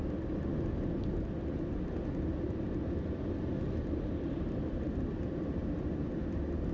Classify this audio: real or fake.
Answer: real